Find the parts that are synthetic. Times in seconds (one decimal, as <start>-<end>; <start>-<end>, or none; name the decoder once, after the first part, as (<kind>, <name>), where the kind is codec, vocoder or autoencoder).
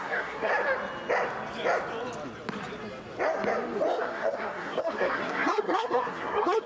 0.0-0.5 (codec, SNAC); 4.0-6.7